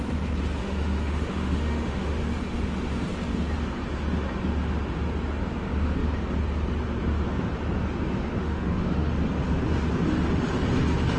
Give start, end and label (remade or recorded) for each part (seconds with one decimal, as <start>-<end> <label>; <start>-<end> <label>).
0.0-0.6 recorded; 0.6-2.2 remade; 2.2-8.4 recorded; 8.4-9.1 remade; 9.1-11.2 recorded